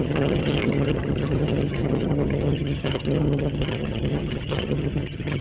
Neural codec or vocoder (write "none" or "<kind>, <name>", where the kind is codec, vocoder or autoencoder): vocoder, HiFi-GAN